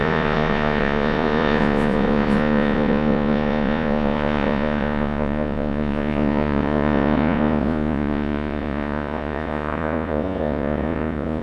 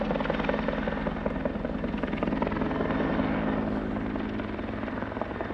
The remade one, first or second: first